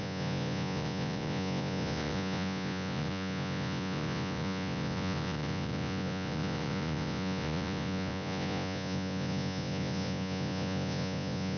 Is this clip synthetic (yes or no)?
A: yes